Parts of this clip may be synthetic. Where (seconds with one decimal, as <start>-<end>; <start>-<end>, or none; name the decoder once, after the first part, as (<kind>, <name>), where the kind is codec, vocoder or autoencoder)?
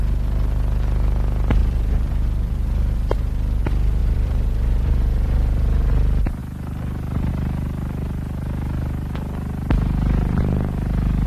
1.6-3.6 (vocoder, BigVGAN v2); 4.0-5.9